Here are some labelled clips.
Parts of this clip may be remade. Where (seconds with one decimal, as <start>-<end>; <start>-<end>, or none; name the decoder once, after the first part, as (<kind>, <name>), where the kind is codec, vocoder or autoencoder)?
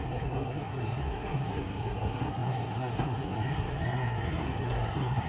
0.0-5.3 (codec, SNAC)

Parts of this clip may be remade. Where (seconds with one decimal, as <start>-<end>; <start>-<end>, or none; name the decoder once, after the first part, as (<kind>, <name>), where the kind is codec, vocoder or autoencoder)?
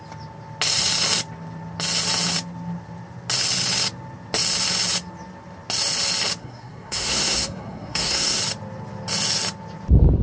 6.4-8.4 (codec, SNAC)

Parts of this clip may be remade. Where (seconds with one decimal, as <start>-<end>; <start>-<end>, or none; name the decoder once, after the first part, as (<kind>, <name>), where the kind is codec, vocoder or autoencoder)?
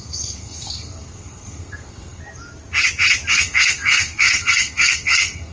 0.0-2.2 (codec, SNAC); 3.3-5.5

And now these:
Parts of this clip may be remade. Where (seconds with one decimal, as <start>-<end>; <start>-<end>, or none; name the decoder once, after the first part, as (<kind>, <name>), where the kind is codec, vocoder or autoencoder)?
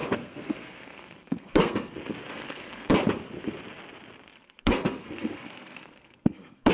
0.0-1.9 (codec, SNAC); 2.3-2.9; 4.3-6.7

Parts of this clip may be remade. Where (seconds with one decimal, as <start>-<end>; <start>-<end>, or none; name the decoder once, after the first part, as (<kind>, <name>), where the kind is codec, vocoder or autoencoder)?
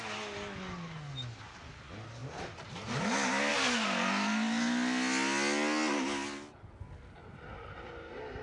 none